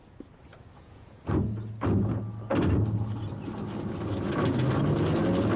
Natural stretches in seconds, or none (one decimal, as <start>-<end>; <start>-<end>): 0.0-0.7; 1.4-5.6